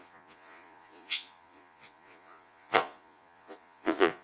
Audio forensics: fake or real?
fake